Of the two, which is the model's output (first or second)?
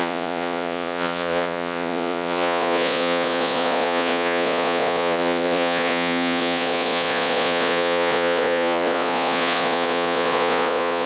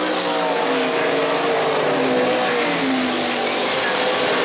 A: first